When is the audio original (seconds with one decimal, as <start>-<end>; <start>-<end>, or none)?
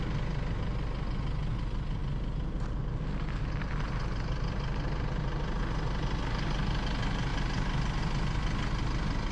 0.0-9.3